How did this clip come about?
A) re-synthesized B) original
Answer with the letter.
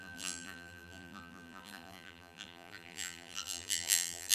A